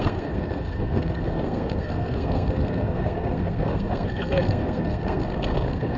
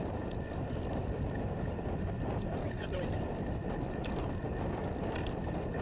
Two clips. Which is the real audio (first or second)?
second